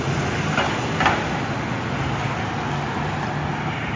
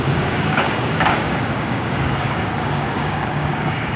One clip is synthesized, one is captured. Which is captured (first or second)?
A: first